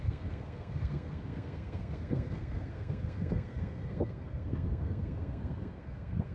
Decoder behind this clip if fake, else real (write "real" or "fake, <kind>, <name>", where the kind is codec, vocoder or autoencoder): fake, codec, SNAC